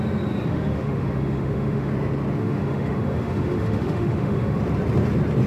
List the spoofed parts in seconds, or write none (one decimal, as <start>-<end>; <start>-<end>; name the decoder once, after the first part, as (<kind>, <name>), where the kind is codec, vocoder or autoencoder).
0.5-1.9 (autoencoder, DAC-VAE); 2.4-4.6